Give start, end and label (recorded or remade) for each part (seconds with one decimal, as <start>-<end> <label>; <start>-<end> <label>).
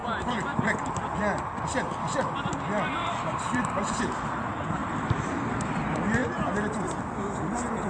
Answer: 0.0-3.0 recorded; 3.0-4.0 remade; 4.0-4.8 recorded; 4.8-5.5 remade; 5.5-7.9 recorded